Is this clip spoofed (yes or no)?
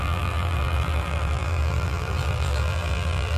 yes